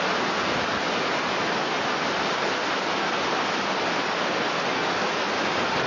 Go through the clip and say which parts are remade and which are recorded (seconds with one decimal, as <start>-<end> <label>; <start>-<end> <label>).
0.0-5.9 recorded